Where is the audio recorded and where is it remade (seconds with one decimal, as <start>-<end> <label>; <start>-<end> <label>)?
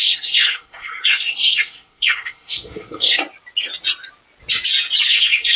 0.0-3.2 remade; 3.2-5.1 recorded; 5.1-5.6 remade